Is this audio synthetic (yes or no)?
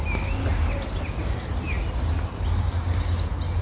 no